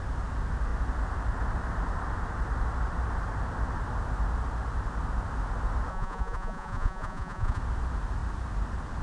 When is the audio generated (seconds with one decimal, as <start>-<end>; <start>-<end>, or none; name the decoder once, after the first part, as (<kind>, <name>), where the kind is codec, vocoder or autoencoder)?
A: 5.9-7.6 (vocoder, Vocos)